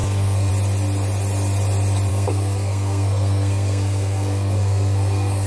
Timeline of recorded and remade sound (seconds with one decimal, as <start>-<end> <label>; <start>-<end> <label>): 0.0-0.5 remade; 0.5-2.1 recorded; 2.1-5.5 remade